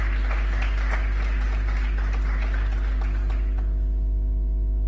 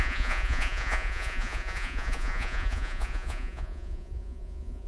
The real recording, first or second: first